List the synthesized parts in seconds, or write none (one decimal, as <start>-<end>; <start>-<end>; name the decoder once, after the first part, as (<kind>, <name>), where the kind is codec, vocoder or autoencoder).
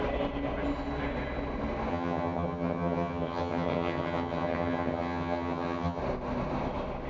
1.9-6.0 (vocoder, HiFi-GAN)